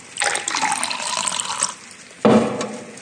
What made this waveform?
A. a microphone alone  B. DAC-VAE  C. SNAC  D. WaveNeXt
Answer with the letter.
A